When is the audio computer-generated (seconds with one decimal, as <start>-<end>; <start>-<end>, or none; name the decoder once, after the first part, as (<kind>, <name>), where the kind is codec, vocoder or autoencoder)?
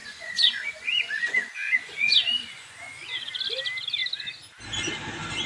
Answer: 0.0-3.3 (vocoder, Vocos)